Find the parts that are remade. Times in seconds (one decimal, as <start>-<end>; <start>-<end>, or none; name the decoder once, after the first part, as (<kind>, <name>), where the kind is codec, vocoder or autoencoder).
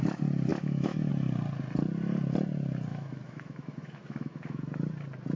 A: 0.5-1.1 (autoencoder, DAC-VAE); 2.9-4.8